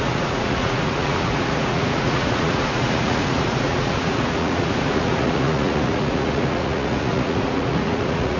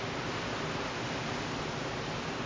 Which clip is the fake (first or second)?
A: first